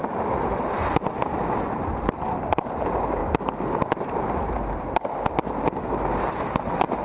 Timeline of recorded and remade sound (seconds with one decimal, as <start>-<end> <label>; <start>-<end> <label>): 0.0-1.6 recorded; 1.6-3.2 remade; 3.2-6.3 recorded; 6.3-7.0 remade